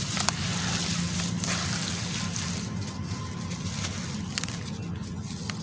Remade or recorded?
recorded